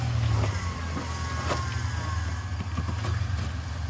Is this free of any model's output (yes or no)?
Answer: yes